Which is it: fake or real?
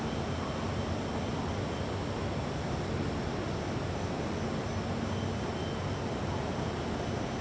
real